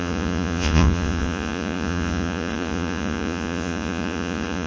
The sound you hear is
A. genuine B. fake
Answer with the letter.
B